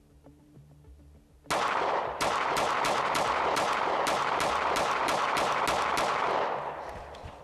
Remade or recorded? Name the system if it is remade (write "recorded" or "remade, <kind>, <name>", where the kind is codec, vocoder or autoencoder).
recorded